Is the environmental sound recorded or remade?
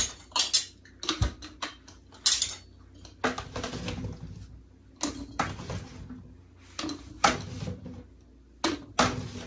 recorded